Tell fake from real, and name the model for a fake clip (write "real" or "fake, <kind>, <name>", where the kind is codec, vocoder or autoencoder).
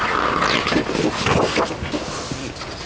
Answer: real